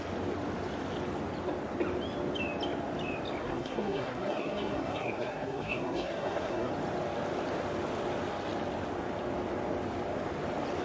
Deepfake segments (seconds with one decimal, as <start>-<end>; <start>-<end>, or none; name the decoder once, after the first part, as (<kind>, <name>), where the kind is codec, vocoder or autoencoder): 3.4-6.7 (codec, SNAC)